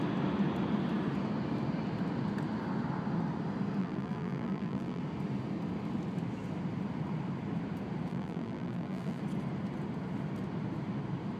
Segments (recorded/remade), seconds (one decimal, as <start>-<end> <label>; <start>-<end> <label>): 0.0-3.8 recorded; 3.8-5.0 remade; 5.0-8.1 recorded; 8.1-9.2 remade; 9.2-11.4 recorded